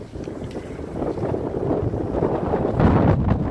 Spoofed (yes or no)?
no